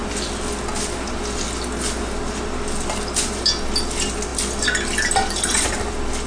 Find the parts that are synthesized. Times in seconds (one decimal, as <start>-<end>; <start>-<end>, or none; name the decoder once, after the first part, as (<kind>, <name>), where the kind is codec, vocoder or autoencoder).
none